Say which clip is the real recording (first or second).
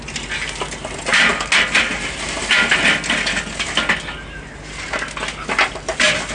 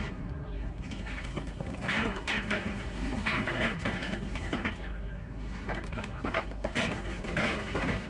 first